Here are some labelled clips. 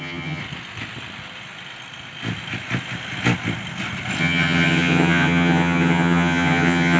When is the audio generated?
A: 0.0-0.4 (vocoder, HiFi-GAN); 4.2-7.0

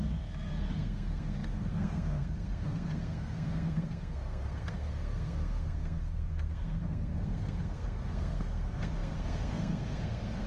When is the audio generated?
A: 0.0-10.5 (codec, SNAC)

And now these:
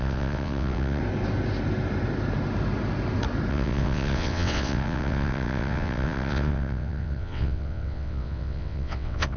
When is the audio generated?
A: 0.0-1.0 (vocoder, WaveNeXt); 3.5-9.4

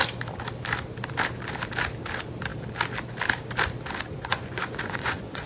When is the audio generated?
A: 4.1-5.5 (vocoder, Vocos)

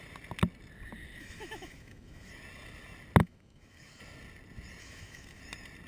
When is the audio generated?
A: 1.2-2.3 (autoencoder, DAC-VAE); 3.2-4.0; 4.8-5.4